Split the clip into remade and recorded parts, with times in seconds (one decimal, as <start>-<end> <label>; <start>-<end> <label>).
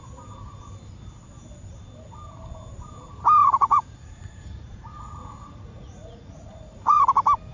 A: 0.0-3.4 recorded; 3.4-7.0 remade; 7.0-7.5 recorded